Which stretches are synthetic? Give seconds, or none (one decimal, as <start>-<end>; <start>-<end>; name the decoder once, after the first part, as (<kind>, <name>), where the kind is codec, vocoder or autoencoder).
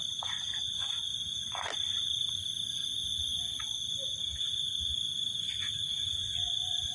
none